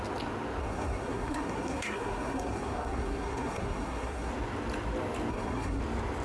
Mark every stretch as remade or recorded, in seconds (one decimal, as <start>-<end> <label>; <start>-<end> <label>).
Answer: 0.0-0.6 recorded; 0.6-4.3 remade; 4.3-5.3 recorded; 5.3-5.8 remade; 5.8-6.2 recorded